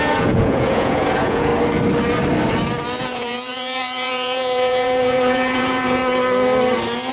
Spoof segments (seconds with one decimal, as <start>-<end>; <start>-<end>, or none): 0.0-1.5; 3.0-6.0